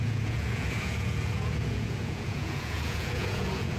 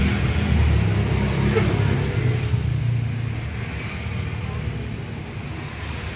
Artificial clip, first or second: first